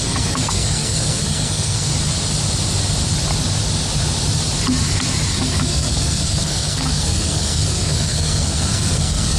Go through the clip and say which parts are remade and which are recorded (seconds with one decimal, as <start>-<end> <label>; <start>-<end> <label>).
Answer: 0.0-1.9 remade; 1.9-5.3 recorded; 5.3-9.4 remade